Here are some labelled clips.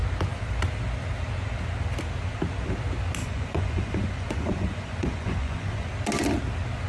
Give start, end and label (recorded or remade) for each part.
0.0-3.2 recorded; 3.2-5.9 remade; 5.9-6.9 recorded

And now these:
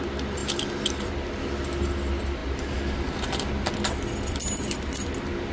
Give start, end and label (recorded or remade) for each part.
0.0-5.5 recorded

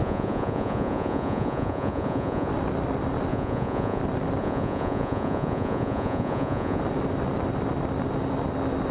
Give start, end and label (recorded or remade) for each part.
0.0-2.5 remade; 2.5-3.3 recorded; 3.3-4.0 remade; 4.0-4.4 recorded; 4.4-6.8 remade; 6.8-8.9 recorded

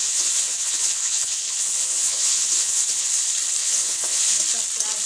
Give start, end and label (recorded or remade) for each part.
0.0-3.1 remade; 3.1-3.6 recorded; 3.6-4.4 remade; 4.4-5.1 recorded

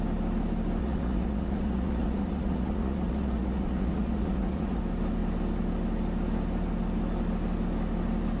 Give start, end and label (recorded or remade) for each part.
0.0-0.8 recorded; 0.8-4.8 remade; 4.8-8.4 recorded